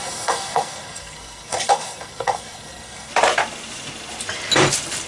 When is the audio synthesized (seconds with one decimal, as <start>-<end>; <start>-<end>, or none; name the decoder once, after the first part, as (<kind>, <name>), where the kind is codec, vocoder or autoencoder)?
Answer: 0.0-3.1 (codec, SNAC)